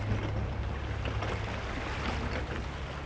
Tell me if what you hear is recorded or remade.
recorded